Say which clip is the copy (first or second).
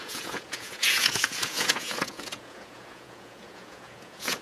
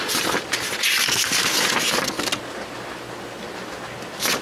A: first